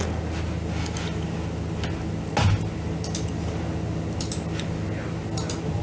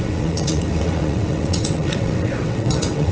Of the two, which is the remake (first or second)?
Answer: second